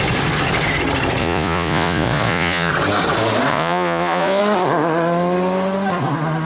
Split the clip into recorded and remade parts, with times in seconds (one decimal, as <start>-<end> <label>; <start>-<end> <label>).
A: 0.0-1.2 recorded; 1.2-2.7 remade; 2.7-3.5 recorded; 3.5-4.4 remade; 4.4-6.4 recorded